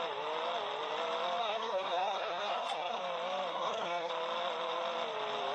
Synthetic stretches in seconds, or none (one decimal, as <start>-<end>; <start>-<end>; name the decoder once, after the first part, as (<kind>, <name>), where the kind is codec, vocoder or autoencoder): 1.4-3.0 (codec, SNAC); 3.5-4.1